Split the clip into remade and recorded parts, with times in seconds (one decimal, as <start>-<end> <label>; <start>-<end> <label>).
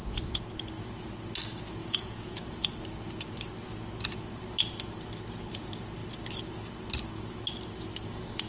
0.0-1.8 recorded; 1.8-2.4 remade; 2.4-8.5 recorded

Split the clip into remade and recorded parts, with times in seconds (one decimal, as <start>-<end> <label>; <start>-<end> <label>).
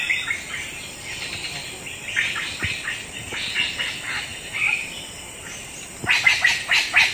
0.0-7.1 recorded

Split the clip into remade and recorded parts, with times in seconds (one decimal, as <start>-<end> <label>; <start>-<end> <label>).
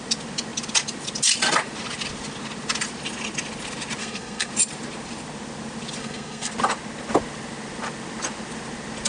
0.0-4.0 recorded; 4.0-4.5 remade; 4.5-6.0 recorded; 6.0-6.5 remade; 6.5-9.1 recorded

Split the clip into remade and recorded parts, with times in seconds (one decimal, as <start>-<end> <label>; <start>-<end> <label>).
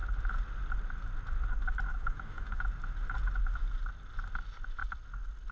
0.0-1.9 recorded; 1.9-2.6 remade; 2.6-5.5 recorded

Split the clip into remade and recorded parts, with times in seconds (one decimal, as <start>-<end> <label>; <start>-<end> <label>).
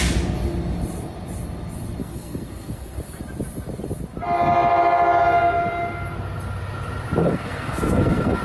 0.0-2.0 recorded; 2.0-3.2 remade; 3.2-7.2 recorded; 7.2-8.4 remade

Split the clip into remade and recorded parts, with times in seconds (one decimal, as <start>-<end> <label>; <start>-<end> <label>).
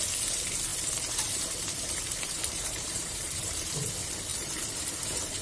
0.0-0.7 recorded; 0.7-3.9 remade; 3.9-4.3 recorded; 4.3-5.4 remade